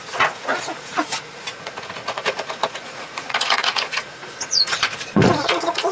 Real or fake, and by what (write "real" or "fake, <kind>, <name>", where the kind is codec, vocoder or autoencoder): fake, vocoder, Vocos